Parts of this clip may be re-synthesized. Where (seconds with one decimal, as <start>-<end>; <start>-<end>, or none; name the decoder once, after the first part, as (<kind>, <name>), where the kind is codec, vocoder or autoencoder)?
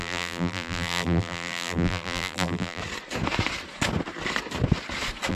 0.0-2.8 (vocoder, BigVGAN v2)